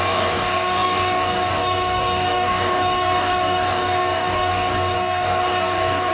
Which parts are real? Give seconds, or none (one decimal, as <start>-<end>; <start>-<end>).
none